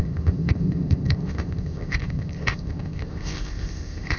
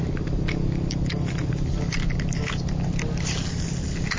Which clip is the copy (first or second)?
first